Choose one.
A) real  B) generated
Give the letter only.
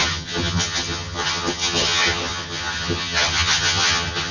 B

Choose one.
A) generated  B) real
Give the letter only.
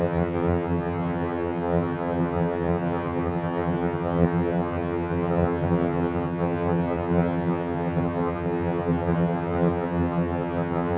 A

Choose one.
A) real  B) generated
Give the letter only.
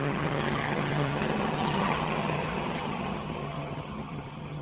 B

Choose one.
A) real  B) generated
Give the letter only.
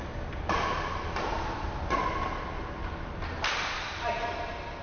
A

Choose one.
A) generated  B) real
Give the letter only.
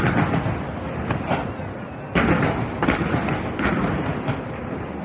B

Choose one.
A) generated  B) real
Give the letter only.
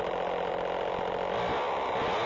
B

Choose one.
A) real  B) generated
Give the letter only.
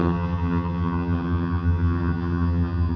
B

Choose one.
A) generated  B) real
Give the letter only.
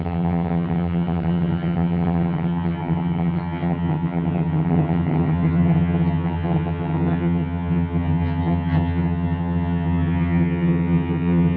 A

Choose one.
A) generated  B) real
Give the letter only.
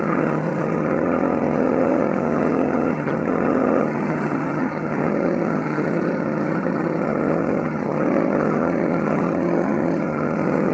A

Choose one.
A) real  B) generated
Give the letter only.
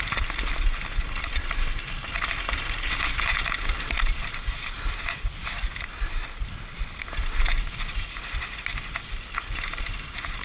A